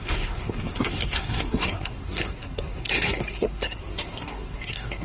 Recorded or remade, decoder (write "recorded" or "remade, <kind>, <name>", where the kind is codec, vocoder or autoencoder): remade, codec, SNAC